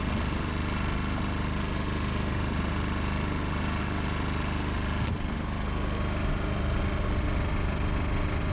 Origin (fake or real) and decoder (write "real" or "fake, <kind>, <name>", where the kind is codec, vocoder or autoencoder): real